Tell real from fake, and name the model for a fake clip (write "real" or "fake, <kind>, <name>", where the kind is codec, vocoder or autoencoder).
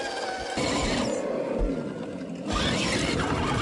real